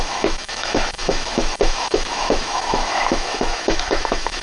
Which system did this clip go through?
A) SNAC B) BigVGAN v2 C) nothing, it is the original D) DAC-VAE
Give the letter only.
D